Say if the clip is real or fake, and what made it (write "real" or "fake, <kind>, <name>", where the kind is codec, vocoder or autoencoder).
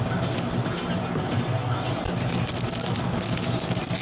real